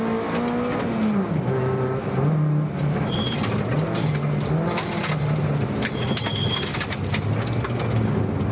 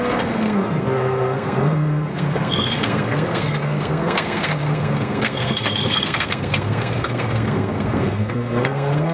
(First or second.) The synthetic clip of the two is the second